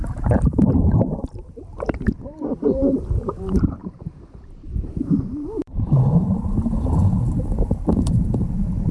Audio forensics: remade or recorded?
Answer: remade